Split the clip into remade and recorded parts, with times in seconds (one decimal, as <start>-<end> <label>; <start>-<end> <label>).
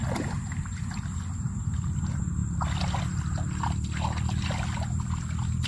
0.0-5.7 recorded